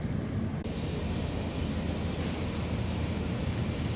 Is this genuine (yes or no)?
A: yes